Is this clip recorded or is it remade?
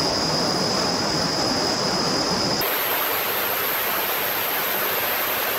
recorded